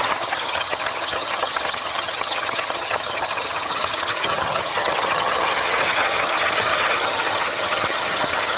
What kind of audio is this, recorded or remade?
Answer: remade